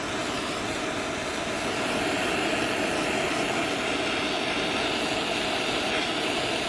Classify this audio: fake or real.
real